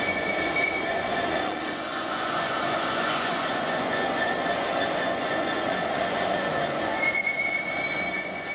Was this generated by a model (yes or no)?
yes